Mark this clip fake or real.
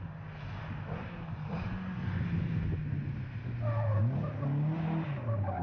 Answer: real